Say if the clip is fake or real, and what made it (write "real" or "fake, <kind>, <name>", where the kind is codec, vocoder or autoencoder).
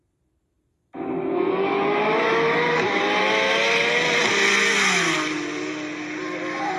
real